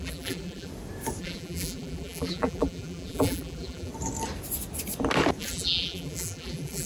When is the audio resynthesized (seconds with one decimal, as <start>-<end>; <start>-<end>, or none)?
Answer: 0.0-0.7; 1.2-3.9; 5.4-6.9